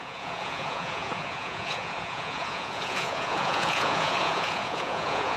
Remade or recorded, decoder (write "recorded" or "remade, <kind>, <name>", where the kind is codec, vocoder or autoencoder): remade, vocoder, Vocos